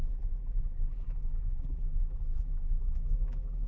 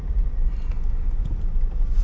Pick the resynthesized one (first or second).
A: first